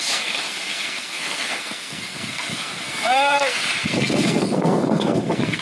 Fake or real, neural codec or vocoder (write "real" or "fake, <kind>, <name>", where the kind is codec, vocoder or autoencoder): fake, codec, SNAC